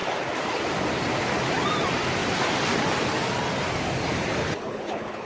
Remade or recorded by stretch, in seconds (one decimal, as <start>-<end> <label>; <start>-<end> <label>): 0.0-4.4 recorded; 4.4-5.3 remade